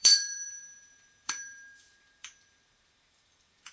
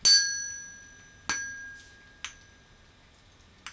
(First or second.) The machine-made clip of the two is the first